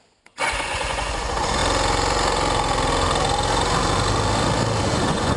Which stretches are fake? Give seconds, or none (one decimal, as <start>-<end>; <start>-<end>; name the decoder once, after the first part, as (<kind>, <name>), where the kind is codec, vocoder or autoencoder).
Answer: 0.0-1.6 (vocoder, Vocos); 4.8-5.4